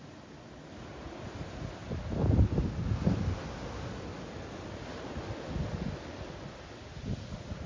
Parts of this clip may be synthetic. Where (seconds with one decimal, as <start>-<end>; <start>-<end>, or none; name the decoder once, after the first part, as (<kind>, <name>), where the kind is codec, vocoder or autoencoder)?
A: none